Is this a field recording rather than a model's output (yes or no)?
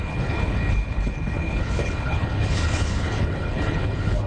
no